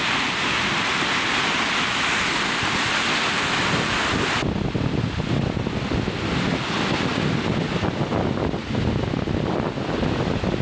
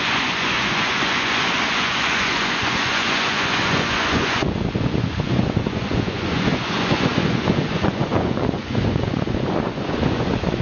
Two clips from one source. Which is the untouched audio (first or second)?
first